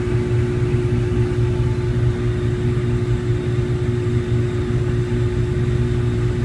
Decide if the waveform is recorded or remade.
recorded